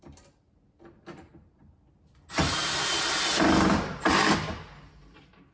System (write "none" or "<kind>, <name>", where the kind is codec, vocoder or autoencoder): none